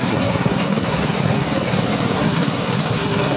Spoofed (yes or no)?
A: yes